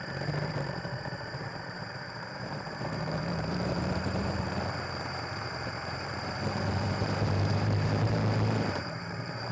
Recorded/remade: remade